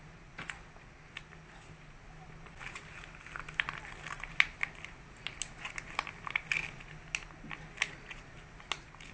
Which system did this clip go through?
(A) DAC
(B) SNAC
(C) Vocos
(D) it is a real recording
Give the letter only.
D